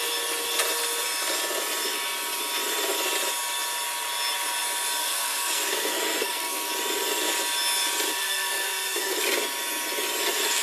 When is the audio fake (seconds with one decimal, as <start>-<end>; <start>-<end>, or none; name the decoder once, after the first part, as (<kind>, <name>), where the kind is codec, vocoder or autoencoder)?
5.0-6.7 (codec, SNAC); 8.2-9.2